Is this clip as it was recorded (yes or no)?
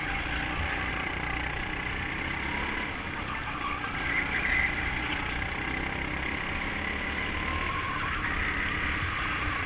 yes